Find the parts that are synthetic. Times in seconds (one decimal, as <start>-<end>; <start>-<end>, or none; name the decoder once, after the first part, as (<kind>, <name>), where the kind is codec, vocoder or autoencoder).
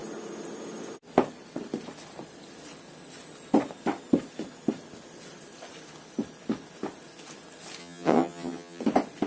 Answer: 7.8-8.8 (vocoder, HiFi-GAN)